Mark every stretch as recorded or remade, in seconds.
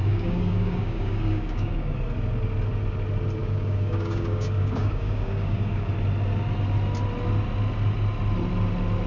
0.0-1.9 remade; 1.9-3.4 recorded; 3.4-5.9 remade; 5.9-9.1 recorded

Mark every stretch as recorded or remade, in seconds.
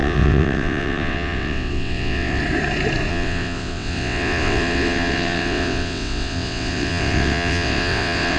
0.0-2.4 remade; 2.4-3.1 recorded; 3.1-8.4 remade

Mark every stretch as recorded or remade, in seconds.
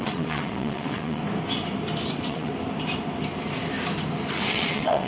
0.0-1.2 remade; 1.2-2.1 recorded; 2.1-2.5 remade; 2.5-4.3 recorded; 4.3-5.1 remade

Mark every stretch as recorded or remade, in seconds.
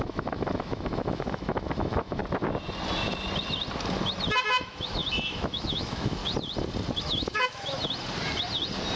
0.0-2.2 remade; 2.2-4.6 recorded; 4.6-6.2 remade; 6.2-7.0 recorded; 7.0-7.8 remade; 7.8-9.0 recorded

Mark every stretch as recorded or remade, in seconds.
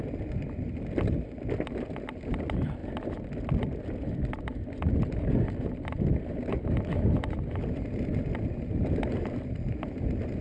0.0-10.4 recorded